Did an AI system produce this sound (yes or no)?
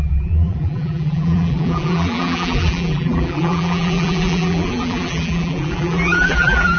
yes